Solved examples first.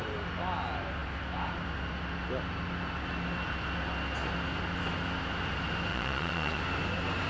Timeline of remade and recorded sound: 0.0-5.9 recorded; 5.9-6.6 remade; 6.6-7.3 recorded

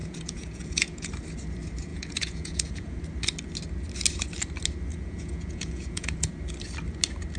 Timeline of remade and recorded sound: 0.0-1.1 remade; 1.1-1.9 recorded; 1.9-3.0 remade; 3.0-4.9 recorded; 4.9-6.3 remade; 6.3-7.4 recorded

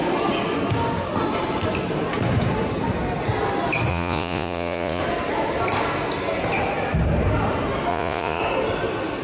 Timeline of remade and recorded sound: 0.0-3.9 recorded; 3.9-5.0 remade; 5.0-7.9 recorded; 7.9-8.4 remade; 8.4-9.2 recorded

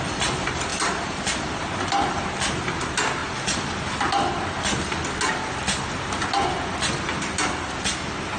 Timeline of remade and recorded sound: 0.0-8.4 recorded

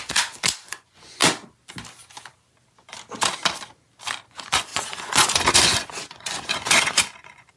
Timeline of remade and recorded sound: 0.0-1.2 remade; 1.2-4.3 recorded; 4.3-7.6 remade

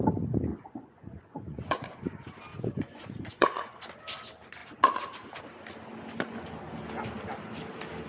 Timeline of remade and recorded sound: 0.0-0.5 recorded; 0.5-2.0 remade; 2.0-2.5 recorded; 2.5-3.8 remade; 3.8-8.1 recorded

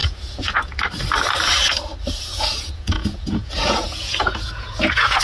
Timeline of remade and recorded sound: 0.0-0.7 remade; 0.7-2.3 recorded; 2.3-5.2 remade

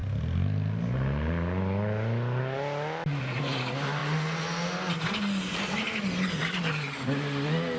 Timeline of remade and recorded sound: 0.0-7.8 recorded